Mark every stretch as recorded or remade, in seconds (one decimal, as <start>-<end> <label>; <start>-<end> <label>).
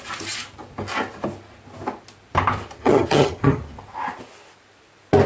0.0-2.8 recorded; 2.8-3.6 remade; 3.6-5.3 recorded